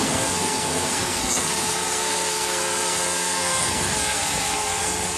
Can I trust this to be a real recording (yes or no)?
no